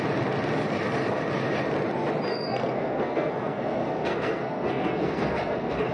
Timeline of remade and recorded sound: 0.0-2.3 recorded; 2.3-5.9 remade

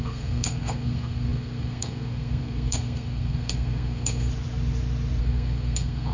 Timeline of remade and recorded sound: 0.0-4.3 remade; 4.3-5.2 recorded; 5.2-6.1 remade